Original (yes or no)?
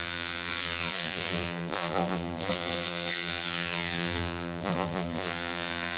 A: no